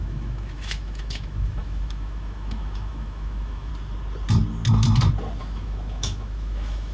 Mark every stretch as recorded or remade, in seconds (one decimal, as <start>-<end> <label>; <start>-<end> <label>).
0.0-3.7 remade; 3.7-5.4 recorded; 5.4-6.9 remade